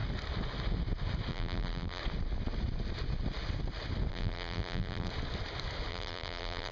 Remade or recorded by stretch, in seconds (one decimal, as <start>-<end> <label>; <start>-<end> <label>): 0.0-1.3 recorded; 1.3-2.0 remade; 2.0-4.1 recorded; 4.1-5.1 remade; 5.1-5.9 recorded; 5.9-6.7 remade